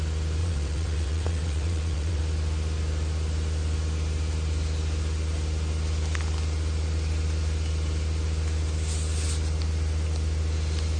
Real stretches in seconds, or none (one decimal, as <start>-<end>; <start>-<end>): 0.0-0.4; 2.2-11.0